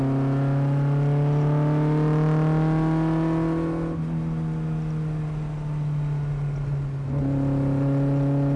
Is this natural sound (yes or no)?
yes